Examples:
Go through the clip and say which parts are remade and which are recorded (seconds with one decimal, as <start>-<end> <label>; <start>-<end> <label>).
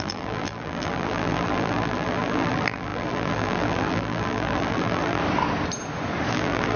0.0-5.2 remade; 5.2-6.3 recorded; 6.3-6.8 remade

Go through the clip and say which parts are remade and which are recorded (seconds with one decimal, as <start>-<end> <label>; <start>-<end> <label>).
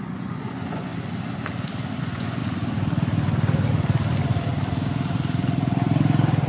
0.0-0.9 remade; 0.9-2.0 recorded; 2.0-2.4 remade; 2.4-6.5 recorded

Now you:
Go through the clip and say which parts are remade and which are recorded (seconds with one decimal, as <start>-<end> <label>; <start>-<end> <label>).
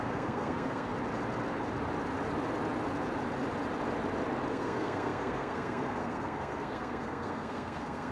0.0-0.9 remade; 0.9-4.5 recorded; 4.5-8.1 remade